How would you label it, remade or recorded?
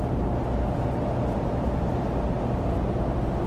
recorded